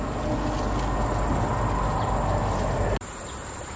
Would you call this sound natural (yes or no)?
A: yes